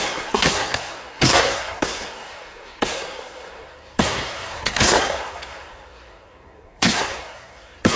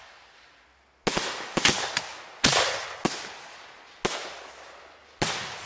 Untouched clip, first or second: second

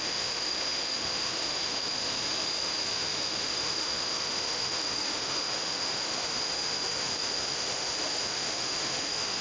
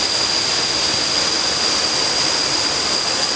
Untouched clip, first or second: second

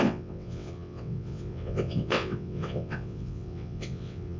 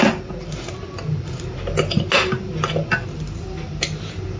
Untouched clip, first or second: second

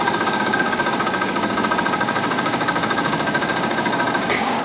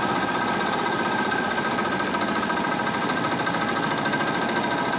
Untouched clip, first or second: second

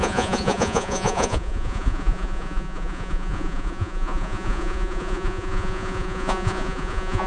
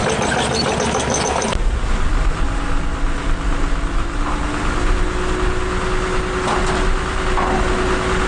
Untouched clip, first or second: second